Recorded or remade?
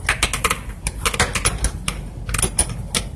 recorded